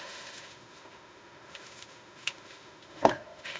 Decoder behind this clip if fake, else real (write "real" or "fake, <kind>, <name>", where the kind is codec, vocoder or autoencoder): fake, autoencoder, DAC-VAE